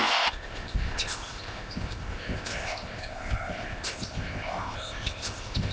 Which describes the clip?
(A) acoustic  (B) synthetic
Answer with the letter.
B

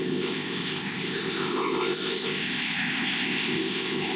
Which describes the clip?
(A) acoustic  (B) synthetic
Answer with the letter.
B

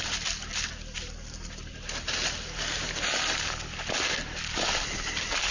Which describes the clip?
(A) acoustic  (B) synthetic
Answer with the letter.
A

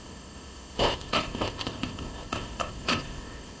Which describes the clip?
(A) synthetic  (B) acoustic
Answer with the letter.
A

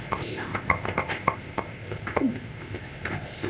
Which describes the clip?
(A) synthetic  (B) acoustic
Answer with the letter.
A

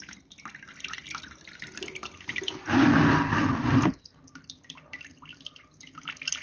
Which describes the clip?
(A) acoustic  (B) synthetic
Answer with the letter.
A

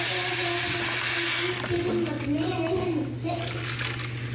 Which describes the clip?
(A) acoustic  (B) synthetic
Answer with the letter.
A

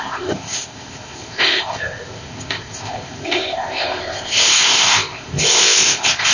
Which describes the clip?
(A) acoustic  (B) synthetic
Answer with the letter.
B